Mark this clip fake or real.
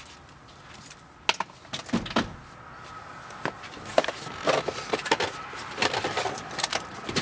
real